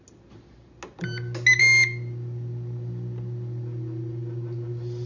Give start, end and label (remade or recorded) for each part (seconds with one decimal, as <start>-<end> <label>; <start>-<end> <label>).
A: 0.0-5.1 recorded